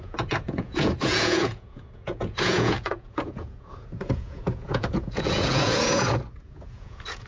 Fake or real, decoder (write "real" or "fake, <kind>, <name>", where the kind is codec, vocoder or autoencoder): fake, vocoder, Vocos